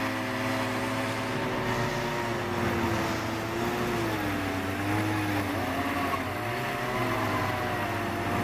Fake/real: real